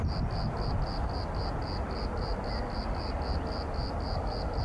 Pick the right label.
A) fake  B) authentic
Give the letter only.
B